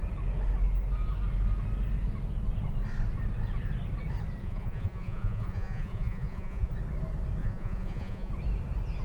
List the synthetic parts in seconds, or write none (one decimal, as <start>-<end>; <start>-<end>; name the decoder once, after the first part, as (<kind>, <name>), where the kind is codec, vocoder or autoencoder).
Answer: 4.4-6.7 (vocoder, Vocos); 7.4-8.3